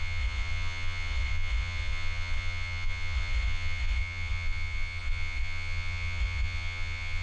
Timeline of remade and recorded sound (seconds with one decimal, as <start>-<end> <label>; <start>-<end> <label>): 0.0-7.2 remade